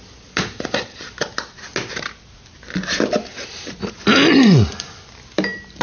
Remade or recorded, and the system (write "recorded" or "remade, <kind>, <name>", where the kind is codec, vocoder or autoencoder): recorded